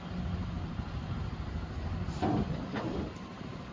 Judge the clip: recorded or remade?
recorded